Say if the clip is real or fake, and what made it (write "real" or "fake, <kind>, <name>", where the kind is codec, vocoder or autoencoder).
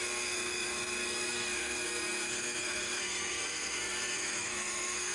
fake, codec, SNAC